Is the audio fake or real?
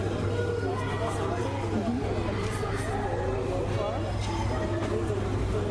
real